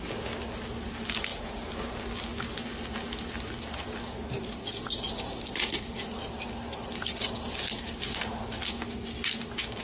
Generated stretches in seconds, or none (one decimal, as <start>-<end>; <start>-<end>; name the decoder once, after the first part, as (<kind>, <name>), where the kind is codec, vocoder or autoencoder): 1.3-2.0 (vocoder, BigVGAN v2)